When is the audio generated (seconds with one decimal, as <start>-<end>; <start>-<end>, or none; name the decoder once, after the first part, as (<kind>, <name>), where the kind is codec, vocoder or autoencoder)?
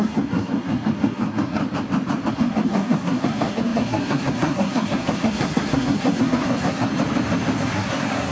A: 0.0-1.6 (codec, SNAC); 2.3-6.9; 7.6-8.3